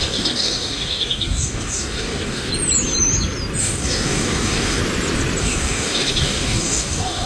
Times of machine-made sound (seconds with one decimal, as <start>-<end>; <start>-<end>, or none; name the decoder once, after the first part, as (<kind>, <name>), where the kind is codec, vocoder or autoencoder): 0.0-2.5 (codec, DAC); 3.6-4.8; 5.4-7.3